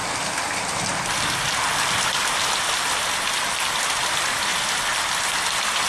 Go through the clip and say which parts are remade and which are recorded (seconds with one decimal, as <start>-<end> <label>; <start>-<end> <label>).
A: 0.0-5.9 recorded